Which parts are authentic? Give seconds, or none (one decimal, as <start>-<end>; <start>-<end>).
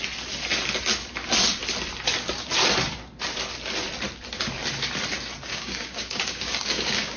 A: 0.0-5.5